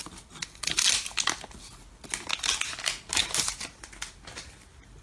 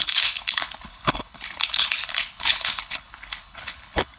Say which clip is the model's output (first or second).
second